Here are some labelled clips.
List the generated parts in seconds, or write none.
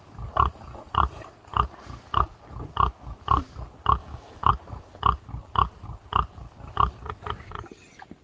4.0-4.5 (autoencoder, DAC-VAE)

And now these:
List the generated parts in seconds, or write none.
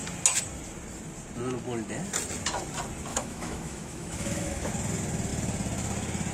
3.1-4.7 (autoencoder, DAC-VAE)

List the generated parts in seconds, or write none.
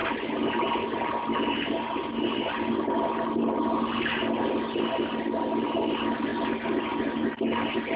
none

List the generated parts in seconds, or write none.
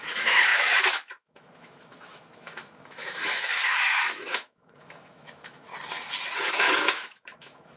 0.0-5.7 (autoencoder, DAC-VAE); 6.5-7.8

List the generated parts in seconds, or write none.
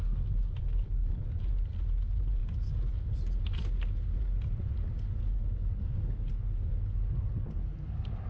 none